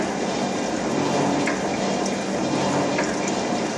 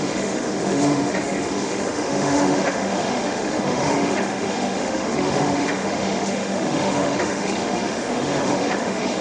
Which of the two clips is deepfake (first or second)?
second